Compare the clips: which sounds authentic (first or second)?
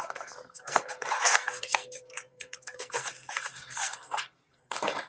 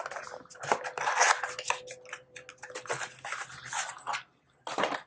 second